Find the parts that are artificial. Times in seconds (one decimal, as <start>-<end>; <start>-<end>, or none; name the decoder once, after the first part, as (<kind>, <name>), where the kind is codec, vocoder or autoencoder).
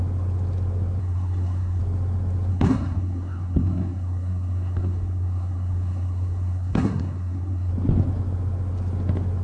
1.0-1.8 (codec, SNAC); 2.5-7.7